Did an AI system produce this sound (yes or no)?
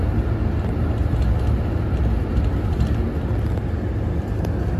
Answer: no